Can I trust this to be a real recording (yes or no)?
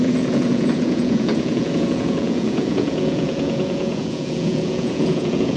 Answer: no